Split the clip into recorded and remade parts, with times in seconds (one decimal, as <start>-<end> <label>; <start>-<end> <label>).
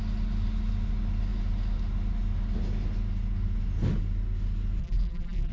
0.0-4.8 recorded; 4.8-5.5 remade